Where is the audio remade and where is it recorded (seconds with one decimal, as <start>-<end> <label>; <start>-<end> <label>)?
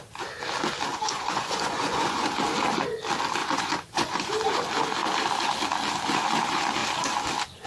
0.0-0.9 recorded; 0.9-2.3 remade; 2.3-3.4 recorded; 3.4-4.3 remade; 4.3-7.7 recorded